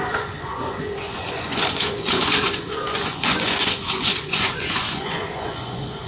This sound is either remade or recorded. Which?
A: remade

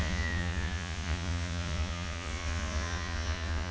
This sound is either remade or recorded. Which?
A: remade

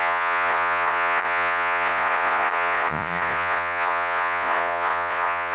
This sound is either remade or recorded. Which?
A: remade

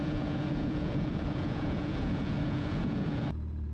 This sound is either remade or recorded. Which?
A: remade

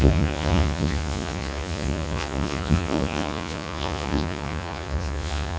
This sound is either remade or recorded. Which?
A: remade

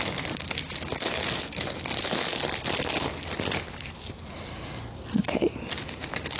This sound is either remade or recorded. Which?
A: recorded